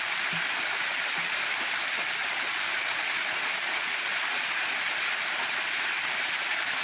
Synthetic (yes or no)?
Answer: no